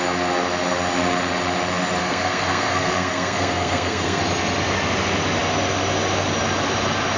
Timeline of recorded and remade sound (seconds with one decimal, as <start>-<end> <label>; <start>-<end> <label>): 0.0-2.0 recorded; 2.0-4.2 remade; 4.2-7.2 recorded